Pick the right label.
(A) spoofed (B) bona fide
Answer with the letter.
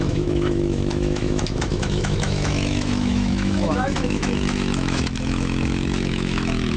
A